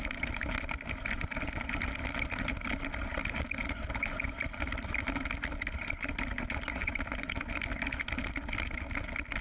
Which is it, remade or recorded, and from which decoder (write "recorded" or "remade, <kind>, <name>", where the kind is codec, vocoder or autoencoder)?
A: recorded